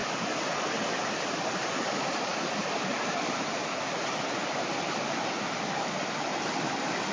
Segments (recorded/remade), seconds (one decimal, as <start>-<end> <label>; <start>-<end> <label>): 0.0-7.1 recorded

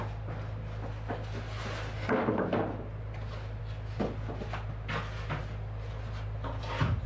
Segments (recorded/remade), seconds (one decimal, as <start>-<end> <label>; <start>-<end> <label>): 0.0-7.1 recorded

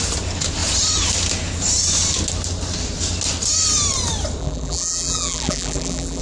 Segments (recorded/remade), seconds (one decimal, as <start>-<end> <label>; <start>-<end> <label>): 0.0-4.4 recorded; 4.4-6.2 remade

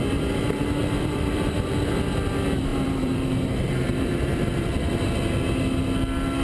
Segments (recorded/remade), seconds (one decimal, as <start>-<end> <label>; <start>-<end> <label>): 0.0-0.8 recorded; 0.8-1.8 remade; 1.8-2.7 recorded; 2.7-4.9 remade; 4.9-6.4 recorded

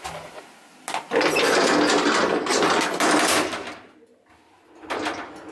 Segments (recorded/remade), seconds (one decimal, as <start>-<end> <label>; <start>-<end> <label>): 0.0-5.5 recorded

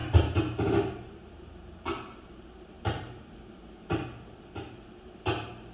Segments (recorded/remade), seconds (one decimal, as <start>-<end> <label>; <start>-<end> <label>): 0.0-5.7 remade

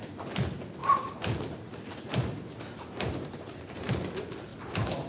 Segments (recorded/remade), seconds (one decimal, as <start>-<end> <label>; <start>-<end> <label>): 0.0-0.8 recorded; 0.8-3.9 remade; 3.9-4.5 recorded; 4.5-5.1 remade

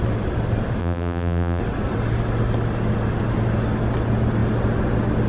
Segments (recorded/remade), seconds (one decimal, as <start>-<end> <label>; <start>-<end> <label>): 0.0-0.8 recorded; 0.8-1.6 remade; 1.6-5.3 recorded